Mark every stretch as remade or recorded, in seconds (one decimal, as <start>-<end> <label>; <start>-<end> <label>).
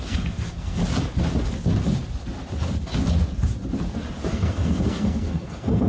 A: 0.0-0.8 remade; 0.8-4.3 recorded; 4.3-5.9 remade